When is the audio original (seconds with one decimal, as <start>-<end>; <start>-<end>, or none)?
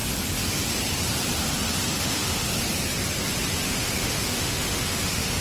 0.0-1.9; 2.5-3.6